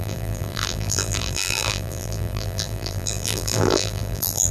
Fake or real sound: fake